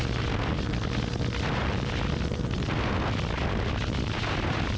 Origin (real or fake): real